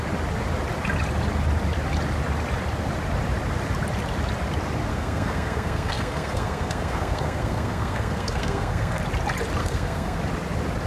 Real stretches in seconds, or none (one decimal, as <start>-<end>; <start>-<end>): 0.0-4.9; 9.0-9.6; 10.2-10.9